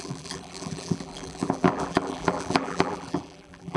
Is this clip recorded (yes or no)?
no